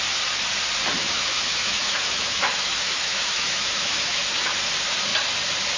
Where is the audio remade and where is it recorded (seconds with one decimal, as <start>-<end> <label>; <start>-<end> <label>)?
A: 0.0-1.0 recorded; 1.0-4.5 remade; 4.5-5.8 recorded